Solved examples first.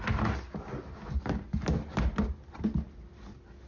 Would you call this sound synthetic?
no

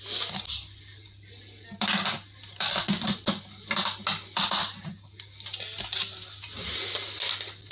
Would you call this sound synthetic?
no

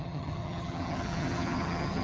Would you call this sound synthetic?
yes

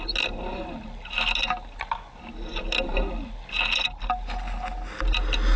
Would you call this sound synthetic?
no